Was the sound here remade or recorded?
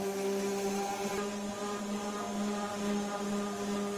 recorded